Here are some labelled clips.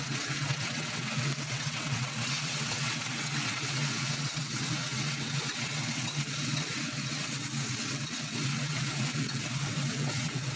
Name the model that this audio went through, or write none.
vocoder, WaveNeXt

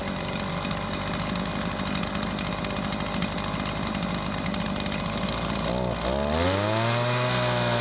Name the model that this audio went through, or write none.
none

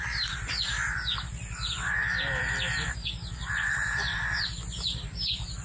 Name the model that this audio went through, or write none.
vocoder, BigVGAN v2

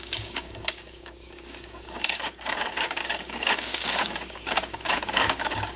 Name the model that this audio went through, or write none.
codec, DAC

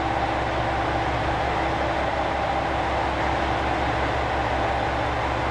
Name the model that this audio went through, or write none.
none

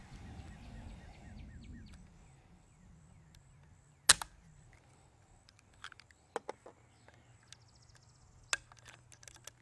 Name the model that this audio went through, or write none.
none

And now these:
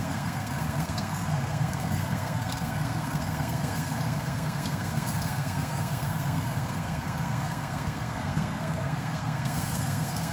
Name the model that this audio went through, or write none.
codec, SNAC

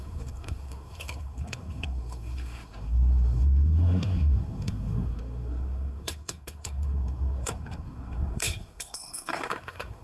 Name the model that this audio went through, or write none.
codec, SNAC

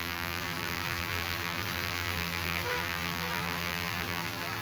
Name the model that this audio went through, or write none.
vocoder, BigVGAN v2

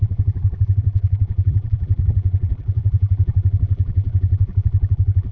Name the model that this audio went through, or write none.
vocoder, BigVGAN v2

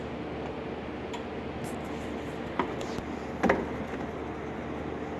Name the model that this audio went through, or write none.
none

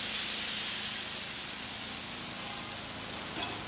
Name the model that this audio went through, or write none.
none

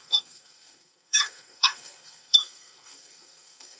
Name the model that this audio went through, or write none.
codec, SNAC